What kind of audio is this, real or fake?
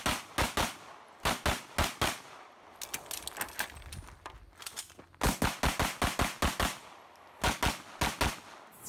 real